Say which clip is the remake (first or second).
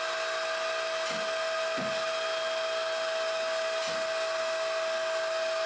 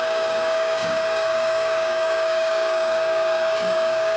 second